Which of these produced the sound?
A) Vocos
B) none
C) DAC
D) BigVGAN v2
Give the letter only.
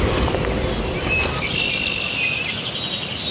B